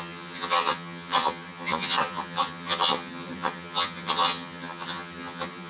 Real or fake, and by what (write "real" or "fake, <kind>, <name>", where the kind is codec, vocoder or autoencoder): fake, vocoder, HiFi-GAN